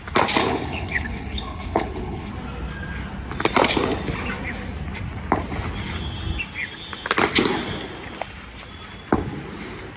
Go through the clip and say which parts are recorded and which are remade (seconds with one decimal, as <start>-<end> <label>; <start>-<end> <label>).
0.0-0.4 recorded; 0.4-2.3 remade; 2.3-10.0 recorded